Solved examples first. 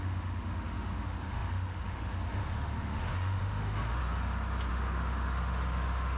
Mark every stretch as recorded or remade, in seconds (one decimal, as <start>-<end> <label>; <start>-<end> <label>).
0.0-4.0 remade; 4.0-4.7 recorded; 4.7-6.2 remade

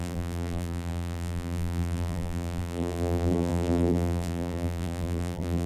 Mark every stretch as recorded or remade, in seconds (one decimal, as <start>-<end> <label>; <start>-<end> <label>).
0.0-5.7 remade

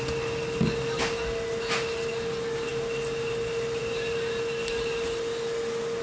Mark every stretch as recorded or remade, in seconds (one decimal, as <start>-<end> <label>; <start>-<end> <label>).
0.0-6.0 recorded